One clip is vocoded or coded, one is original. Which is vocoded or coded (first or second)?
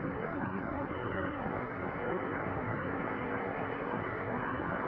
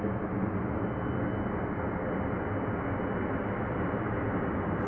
first